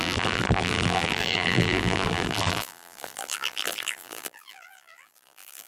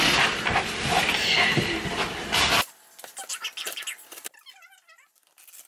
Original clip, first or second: second